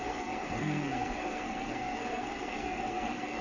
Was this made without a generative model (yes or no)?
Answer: no